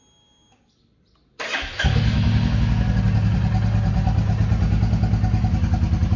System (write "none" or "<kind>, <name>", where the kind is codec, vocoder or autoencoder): none